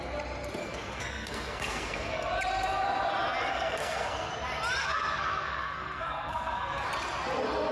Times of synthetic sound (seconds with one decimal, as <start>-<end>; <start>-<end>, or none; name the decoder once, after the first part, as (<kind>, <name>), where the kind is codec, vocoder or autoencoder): 0.6-2.3 (codec, SNAC); 3.5-4.3; 4.8-6.9